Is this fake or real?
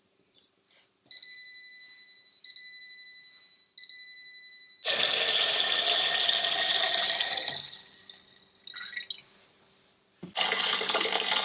real